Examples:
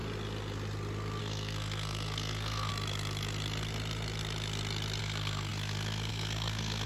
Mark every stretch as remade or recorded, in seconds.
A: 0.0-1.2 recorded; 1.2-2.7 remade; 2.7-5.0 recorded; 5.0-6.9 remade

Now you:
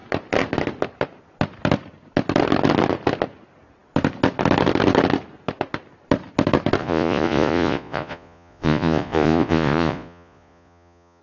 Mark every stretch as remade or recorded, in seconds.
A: 0.0-6.8 recorded; 6.8-11.2 remade

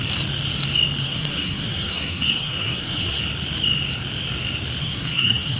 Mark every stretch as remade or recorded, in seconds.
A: 0.0-1.0 recorded; 1.0-3.2 remade; 3.2-4.8 recorded; 4.8-5.6 remade

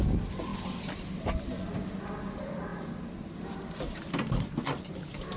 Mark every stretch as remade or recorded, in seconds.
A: 0.0-5.4 recorded